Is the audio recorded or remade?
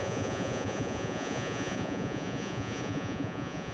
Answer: remade